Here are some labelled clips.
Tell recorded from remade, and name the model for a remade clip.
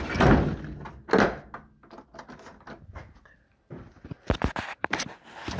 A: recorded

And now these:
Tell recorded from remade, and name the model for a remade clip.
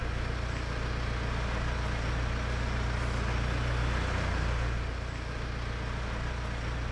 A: recorded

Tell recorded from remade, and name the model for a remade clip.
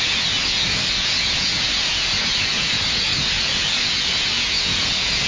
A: remade, vocoder, Vocos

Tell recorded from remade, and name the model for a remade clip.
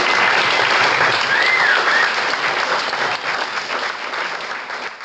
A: recorded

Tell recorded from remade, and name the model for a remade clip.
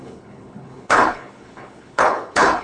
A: remade, codec, HILCodec